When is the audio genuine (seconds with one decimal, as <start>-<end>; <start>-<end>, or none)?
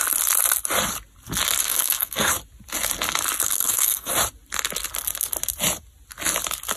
0.0-1.6; 2.3-3.4; 4.1-6.8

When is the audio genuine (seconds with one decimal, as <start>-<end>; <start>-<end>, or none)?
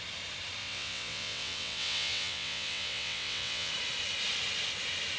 0.0-0.6; 3.7-5.2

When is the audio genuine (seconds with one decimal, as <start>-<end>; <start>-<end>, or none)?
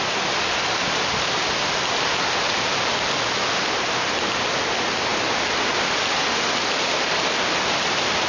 0.0-8.3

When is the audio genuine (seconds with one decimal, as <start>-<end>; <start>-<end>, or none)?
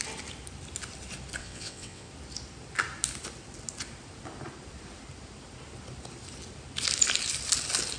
0.0-1.4; 2.1-8.0